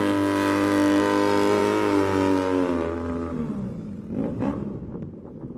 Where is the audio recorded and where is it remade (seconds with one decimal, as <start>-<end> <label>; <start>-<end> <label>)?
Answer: 0.0-4.2 recorded; 4.2-4.8 remade; 4.8-5.6 recorded